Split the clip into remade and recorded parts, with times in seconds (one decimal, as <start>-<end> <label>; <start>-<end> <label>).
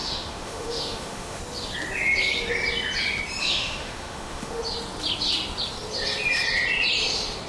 0.0-1.4 remade; 1.4-3.4 recorded; 3.4-4.6 remade; 4.6-7.5 recorded